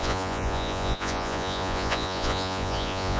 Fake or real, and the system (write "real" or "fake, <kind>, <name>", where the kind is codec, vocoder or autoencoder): fake, vocoder, Vocos